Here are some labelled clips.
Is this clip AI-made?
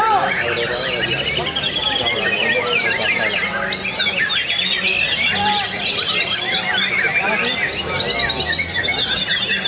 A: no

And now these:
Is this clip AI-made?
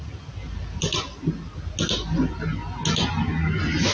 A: no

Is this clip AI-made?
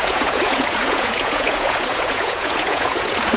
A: yes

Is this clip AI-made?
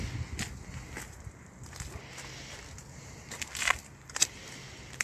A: no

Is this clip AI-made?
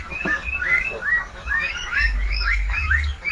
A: yes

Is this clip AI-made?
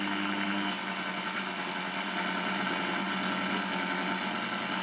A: no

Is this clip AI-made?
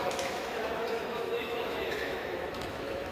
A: yes